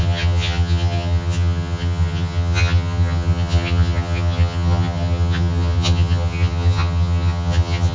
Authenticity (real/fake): fake